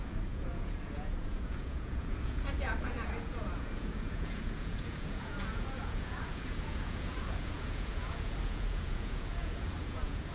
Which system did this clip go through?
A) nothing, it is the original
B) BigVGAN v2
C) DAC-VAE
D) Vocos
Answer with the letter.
D